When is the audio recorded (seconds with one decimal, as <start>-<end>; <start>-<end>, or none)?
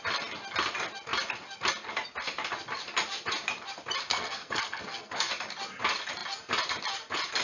0.0-4.1; 5.3-7.4